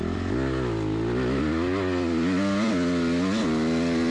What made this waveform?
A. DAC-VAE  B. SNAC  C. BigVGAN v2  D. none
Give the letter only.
D